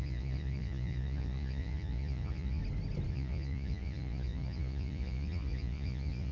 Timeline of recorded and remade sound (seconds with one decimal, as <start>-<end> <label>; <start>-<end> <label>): 0.0-2.6 remade; 2.6-3.1 recorded; 3.1-6.3 remade